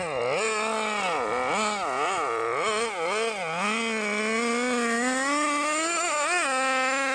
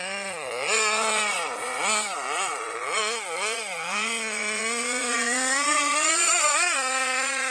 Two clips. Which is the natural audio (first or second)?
first